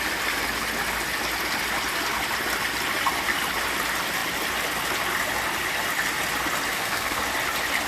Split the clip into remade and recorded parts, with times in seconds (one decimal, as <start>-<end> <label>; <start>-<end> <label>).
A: 0.0-6.7 recorded; 6.7-7.2 remade; 7.2-7.9 recorded